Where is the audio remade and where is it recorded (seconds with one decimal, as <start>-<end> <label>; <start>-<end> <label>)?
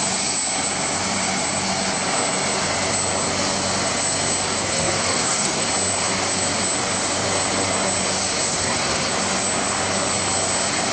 0.0-4.6 recorded; 4.6-5.7 remade; 5.7-8.5 recorded; 8.5-9.1 remade; 9.1-10.9 recorded